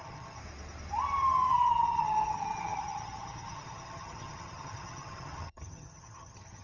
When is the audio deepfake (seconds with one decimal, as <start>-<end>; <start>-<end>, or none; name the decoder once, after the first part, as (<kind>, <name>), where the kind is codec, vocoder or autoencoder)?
0.0-0.4 (vocoder, HiFi-GAN); 1.5-6.6